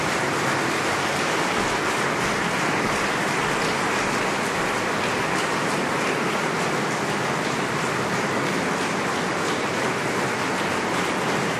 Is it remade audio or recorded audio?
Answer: recorded